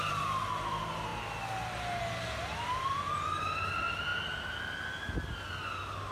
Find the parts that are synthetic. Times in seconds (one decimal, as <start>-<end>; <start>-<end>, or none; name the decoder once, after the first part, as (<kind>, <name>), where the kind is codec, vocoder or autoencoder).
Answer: none